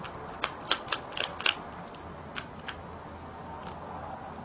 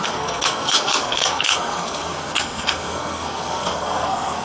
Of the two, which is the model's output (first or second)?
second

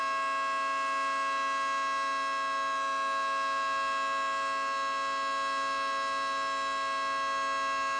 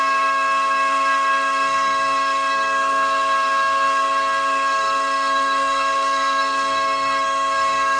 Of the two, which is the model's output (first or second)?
second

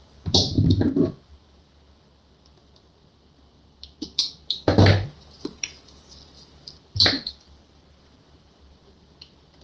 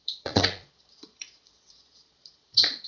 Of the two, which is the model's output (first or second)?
second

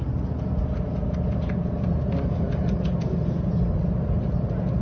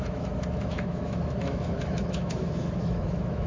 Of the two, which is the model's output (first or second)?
second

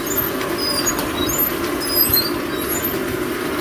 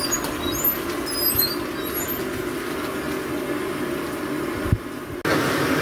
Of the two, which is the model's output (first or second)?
first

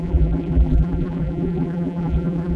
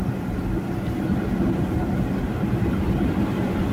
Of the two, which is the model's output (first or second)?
first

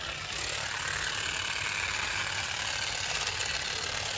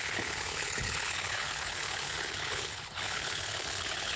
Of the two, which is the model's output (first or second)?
second